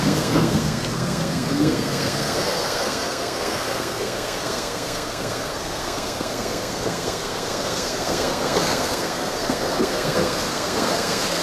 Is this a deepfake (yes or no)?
yes